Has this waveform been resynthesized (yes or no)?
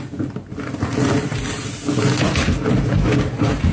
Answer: no